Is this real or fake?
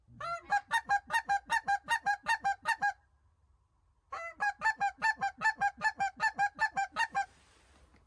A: real